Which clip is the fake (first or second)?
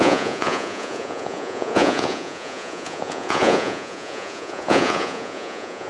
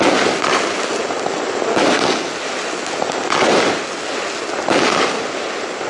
first